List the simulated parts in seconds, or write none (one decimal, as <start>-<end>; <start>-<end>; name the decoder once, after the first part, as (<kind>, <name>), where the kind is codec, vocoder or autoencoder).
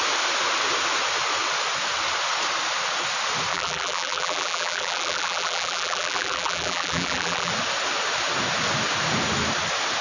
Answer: 3.5-7.5 (vocoder, BigVGAN v2)